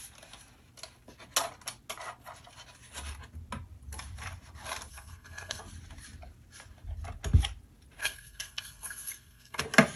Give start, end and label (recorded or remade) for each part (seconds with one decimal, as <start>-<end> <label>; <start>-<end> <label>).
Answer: 0.0-4.9 recorded; 4.9-5.6 remade; 5.6-8.0 recorded; 8.0-9.6 remade; 9.6-10.0 recorded